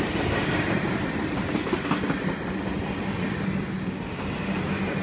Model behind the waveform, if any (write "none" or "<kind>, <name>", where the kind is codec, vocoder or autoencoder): none